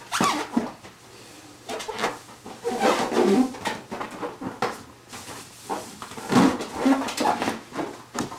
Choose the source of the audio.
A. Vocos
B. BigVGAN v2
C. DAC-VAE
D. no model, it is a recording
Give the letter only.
D